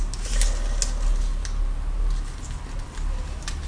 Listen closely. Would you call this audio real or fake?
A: real